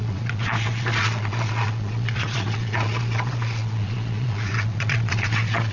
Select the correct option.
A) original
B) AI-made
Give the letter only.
B